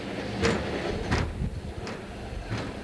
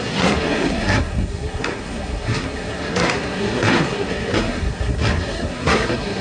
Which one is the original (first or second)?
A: first